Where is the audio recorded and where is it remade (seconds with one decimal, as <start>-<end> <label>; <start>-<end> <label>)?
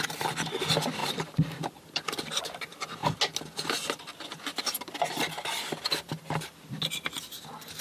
0.0-1.0 recorded; 1.0-2.4 remade; 2.4-7.8 recorded